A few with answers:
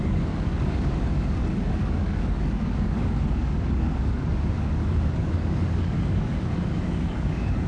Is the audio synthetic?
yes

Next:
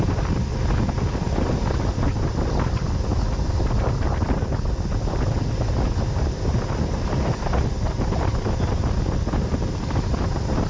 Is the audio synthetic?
no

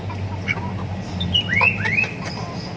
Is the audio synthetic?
no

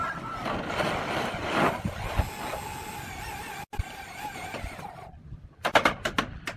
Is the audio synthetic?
no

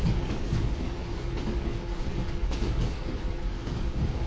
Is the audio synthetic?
yes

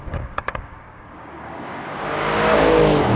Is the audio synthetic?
yes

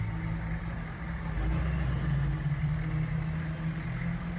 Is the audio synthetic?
no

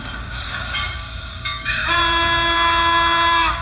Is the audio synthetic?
yes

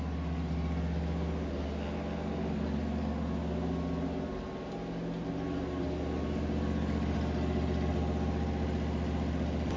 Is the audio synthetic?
no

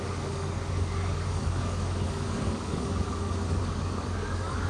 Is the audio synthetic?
yes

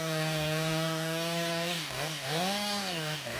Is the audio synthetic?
yes